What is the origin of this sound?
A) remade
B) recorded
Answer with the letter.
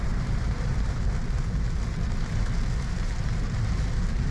A